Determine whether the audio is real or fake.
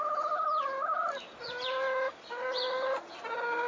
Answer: real